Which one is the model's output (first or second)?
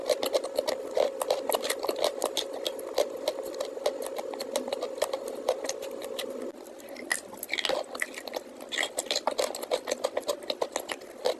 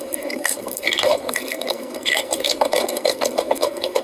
second